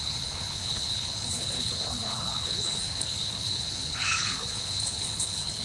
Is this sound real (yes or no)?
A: no